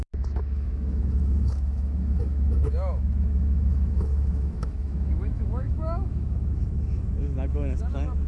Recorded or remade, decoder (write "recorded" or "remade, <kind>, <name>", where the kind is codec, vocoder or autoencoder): remade, autoencoder, DAC-VAE